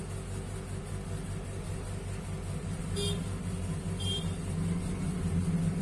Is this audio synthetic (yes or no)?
no